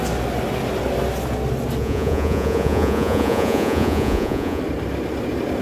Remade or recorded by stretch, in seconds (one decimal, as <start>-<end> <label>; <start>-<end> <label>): 0.0-1.8 recorded; 1.8-4.6 remade; 4.6-5.6 recorded